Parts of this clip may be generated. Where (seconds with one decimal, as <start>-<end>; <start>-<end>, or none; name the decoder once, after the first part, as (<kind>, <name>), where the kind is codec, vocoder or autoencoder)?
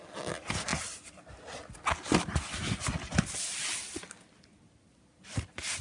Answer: none